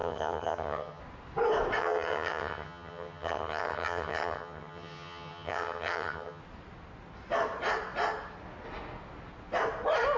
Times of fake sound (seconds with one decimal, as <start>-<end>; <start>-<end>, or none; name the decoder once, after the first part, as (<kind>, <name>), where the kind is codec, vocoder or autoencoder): 0.0-1.0 (vocoder, HiFi-GAN); 1.8-6.4